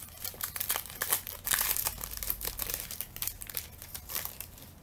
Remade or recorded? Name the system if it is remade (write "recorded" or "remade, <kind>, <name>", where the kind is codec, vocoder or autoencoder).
remade, vocoder, BigVGAN v2